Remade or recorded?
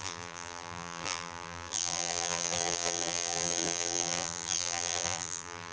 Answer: remade